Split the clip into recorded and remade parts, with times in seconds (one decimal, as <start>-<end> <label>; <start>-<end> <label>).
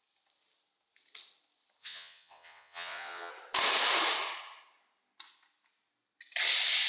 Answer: 0.0-1.8 recorded; 1.8-3.3 remade; 3.3-6.9 recorded